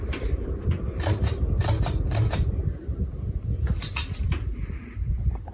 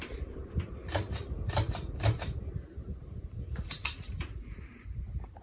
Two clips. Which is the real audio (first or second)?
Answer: first